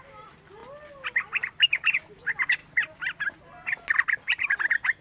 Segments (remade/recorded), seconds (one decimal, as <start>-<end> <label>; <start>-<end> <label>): 0.0-5.0 recorded